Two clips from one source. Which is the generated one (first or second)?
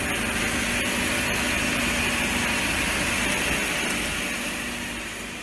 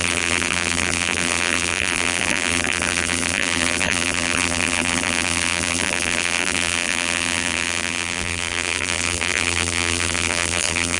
second